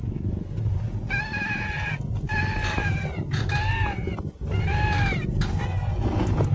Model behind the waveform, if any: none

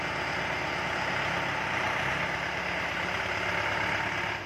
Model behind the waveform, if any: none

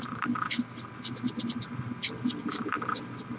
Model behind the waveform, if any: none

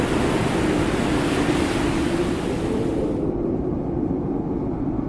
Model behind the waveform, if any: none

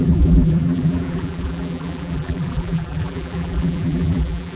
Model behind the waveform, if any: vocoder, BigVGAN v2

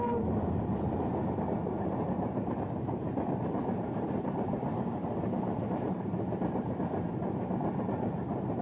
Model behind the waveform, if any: vocoder, BigVGAN v2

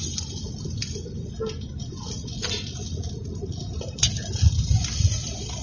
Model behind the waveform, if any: vocoder, BigVGAN v2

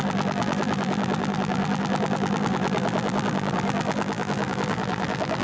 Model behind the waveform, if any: vocoder, BigVGAN v2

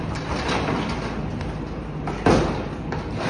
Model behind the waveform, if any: none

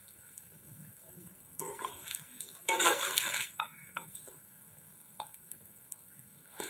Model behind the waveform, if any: codec, SNAC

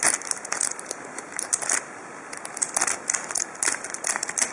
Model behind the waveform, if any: none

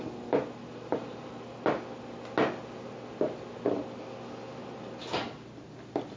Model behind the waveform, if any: none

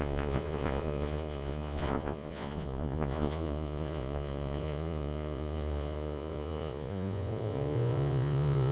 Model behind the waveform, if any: vocoder, Vocos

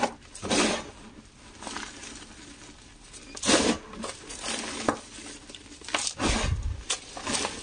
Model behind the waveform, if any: none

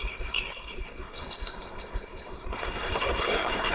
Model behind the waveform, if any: codec, SNAC